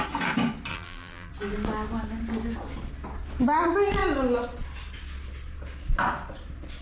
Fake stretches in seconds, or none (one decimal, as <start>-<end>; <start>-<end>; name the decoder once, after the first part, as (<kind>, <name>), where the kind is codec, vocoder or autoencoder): 0.7-1.3 (vocoder, BigVGAN v2)